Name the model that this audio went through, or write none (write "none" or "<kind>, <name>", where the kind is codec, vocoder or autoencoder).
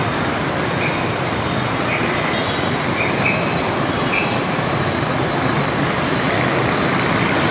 none